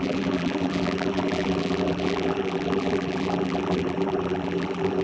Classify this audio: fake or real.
fake